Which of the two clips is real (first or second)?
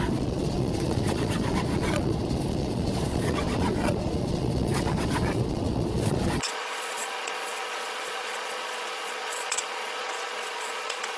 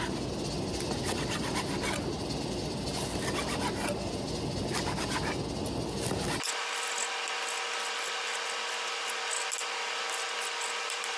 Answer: second